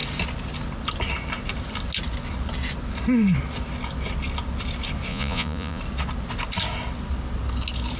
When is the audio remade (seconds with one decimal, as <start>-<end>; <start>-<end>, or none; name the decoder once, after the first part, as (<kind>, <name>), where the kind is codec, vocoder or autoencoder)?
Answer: 5.1-5.8 (vocoder, Vocos)